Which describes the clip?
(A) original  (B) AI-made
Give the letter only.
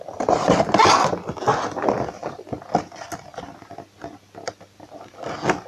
A